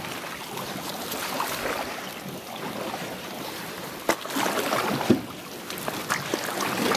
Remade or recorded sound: recorded